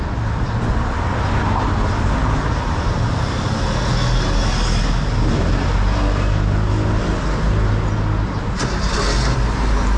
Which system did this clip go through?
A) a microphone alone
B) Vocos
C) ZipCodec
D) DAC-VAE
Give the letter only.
A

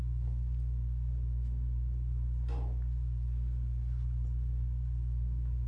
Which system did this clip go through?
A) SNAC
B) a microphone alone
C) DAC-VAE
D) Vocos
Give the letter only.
B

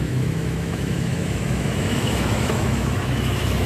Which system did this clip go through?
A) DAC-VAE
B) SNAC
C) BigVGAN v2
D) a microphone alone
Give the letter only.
A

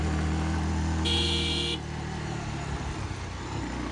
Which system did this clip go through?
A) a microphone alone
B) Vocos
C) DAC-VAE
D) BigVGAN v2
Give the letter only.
A